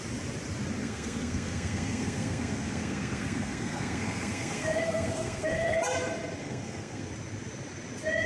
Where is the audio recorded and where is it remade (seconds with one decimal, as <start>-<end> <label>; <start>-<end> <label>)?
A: 0.0-0.8 recorded; 0.8-5.8 remade; 5.8-6.4 recorded; 6.4-7.1 remade; 7.1-8.3 recorded